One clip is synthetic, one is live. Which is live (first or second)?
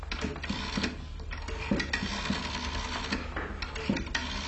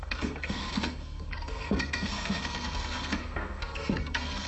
first